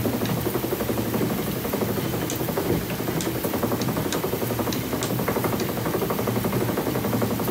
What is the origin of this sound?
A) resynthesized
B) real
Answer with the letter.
B